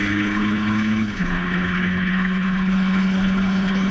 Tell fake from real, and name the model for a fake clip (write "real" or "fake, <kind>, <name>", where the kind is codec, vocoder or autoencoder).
fake, codec, HILCodec